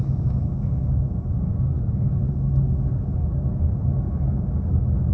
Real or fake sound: fake